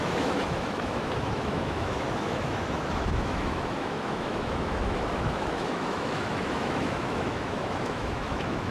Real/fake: fake